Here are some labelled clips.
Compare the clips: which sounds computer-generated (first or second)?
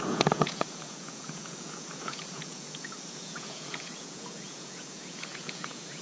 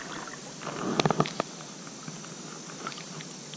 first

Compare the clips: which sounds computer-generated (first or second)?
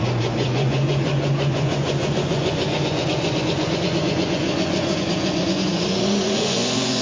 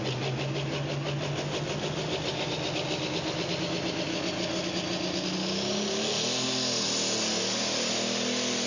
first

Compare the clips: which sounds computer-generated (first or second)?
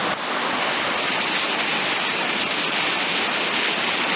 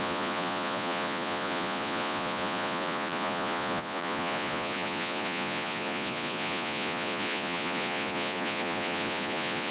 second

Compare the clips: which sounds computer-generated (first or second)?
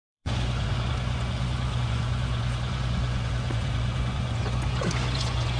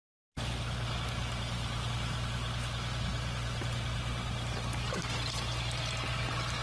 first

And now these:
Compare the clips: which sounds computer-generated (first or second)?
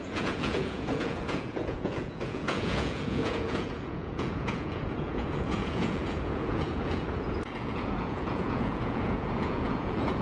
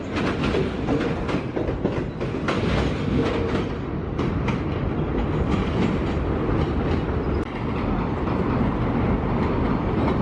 first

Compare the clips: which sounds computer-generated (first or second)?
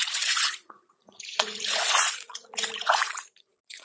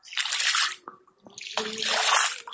first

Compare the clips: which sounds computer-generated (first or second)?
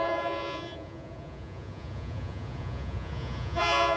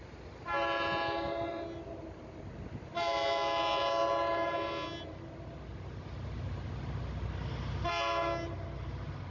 first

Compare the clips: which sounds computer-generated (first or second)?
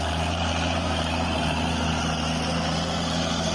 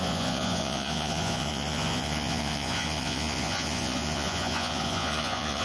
second